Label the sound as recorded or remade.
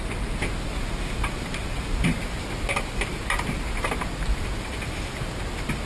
recorded